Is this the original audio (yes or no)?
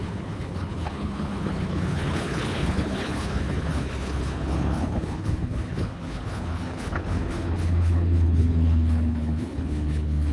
no